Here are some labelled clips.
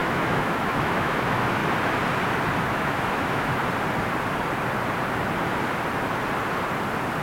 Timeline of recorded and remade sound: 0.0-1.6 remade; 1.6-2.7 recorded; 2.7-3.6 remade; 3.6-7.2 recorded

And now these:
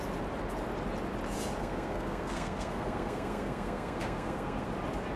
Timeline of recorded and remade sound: 0.0-1.6 recorded; 1.6-4.7 remade; 4.7-5.2 recorded